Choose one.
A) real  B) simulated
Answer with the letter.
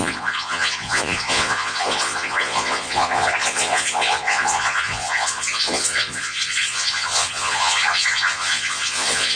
B